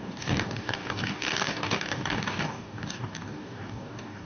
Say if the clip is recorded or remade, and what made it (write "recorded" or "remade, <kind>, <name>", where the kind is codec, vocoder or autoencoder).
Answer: remade, codec, DAC